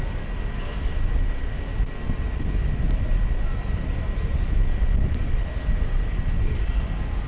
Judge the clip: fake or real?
real